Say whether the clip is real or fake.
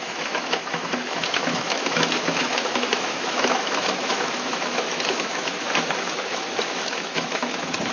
fake